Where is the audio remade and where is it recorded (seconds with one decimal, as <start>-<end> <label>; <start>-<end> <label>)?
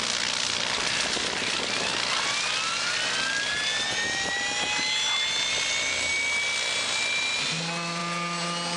0.0-8.8 recorded